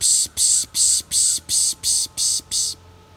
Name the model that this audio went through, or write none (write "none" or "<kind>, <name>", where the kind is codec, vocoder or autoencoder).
none